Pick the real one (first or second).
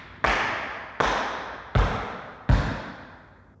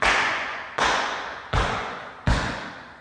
first